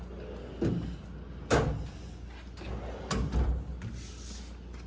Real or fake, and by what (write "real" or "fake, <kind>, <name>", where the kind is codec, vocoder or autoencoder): real